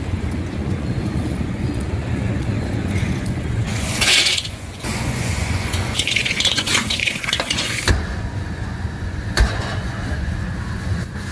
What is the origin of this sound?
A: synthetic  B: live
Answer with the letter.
A